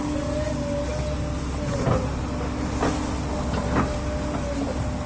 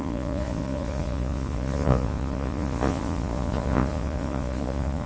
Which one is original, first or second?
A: first